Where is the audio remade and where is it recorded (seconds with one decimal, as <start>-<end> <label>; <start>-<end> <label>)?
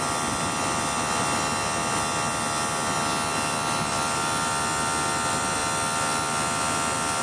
0.0-1.8 remade; 1.8-3.9 recorded; 3.9-5.6 remade; 5.6-7.2 recorded